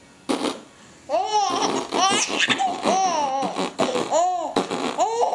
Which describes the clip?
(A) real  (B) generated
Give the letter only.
A